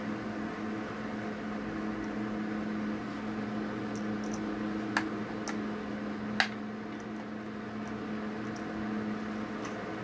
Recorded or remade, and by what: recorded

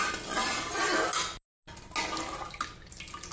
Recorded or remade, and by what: recorded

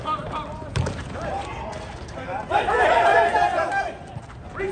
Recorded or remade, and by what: recorded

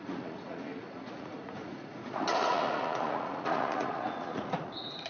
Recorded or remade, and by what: remade, vocoder, Vocos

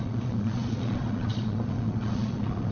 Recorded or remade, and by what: remade, vocoder, Vocos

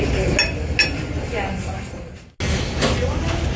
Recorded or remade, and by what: recorded